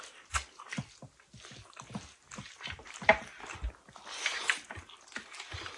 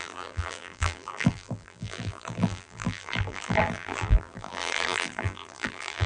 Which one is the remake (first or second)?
second